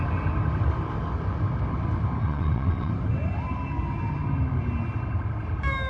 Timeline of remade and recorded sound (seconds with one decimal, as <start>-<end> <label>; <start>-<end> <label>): 0.0-2.2 recorded; 2.2-2.9 remade; 2.9-5.9 recorded